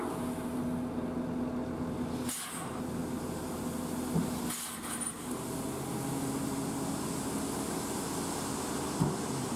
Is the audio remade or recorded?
recorded